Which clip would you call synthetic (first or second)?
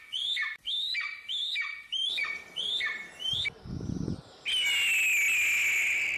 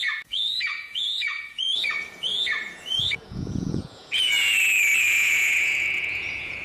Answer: second